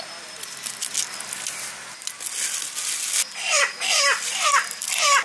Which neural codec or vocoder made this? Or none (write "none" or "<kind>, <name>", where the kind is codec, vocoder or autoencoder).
none